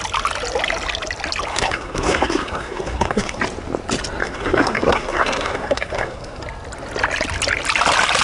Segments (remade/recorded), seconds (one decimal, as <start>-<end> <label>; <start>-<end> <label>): 0.0-1.5 recorded; 1.5-3.4 remade; 3.4-4.2 recorded; 4.2-6.4 remade; 6.4-8.2 recorded